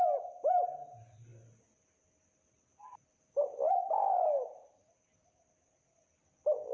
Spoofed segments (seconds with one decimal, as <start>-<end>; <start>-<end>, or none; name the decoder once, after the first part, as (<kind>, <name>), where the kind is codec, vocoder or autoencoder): none